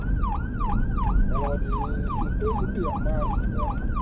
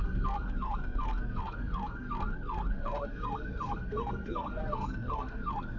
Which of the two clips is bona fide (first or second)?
first